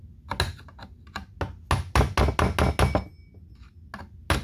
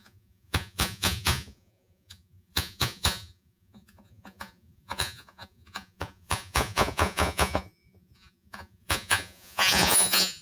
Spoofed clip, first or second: second